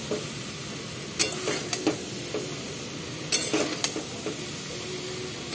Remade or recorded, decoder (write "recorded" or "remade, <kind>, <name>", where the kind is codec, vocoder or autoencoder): recorded